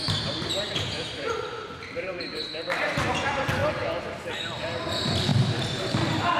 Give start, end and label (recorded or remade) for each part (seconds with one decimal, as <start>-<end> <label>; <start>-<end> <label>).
0.0-3.0 remade; 3.0-6.4 recorded